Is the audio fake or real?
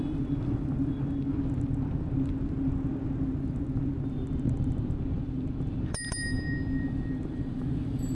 real